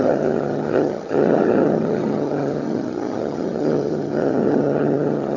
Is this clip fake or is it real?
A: fake